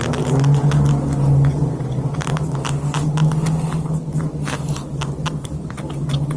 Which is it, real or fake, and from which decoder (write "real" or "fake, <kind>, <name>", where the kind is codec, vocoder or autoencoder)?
real